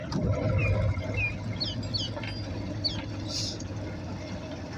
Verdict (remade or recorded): recorded